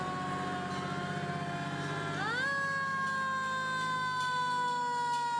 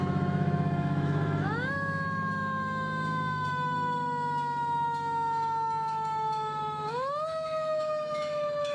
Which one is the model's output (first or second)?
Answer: second